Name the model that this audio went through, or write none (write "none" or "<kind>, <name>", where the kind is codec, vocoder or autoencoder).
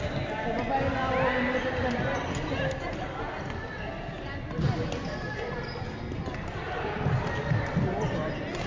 none